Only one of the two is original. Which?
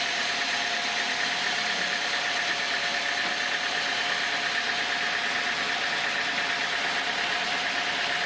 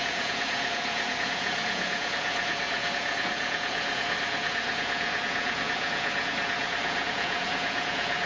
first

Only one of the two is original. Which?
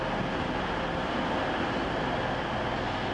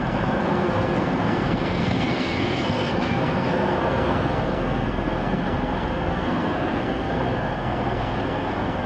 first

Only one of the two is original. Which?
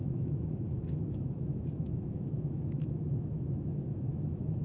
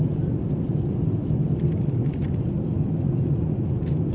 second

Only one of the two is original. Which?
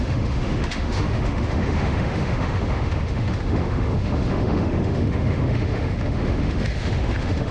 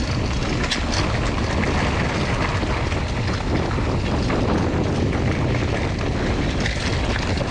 second